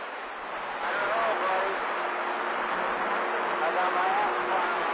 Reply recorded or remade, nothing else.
recorded